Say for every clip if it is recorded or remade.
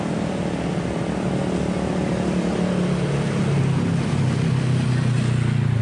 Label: recorded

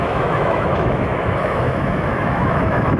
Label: remade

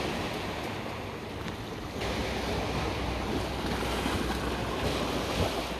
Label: recorded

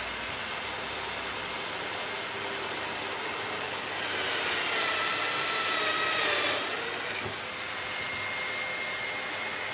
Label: recorded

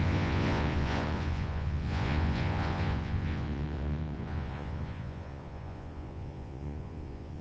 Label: remade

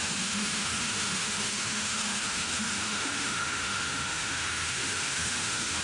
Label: remade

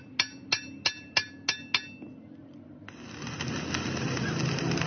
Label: recorded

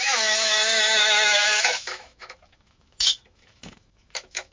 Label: remade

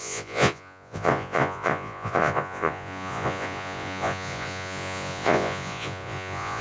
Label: remade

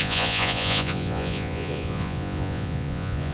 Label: remade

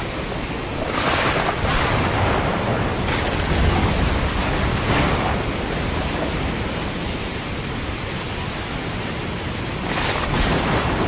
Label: recorded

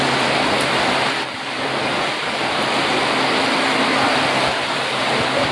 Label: remade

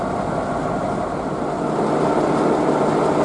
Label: recorded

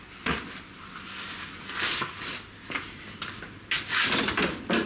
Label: recorded